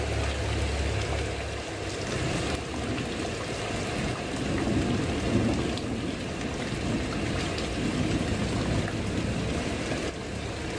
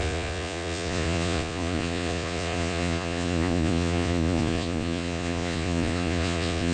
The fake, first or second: second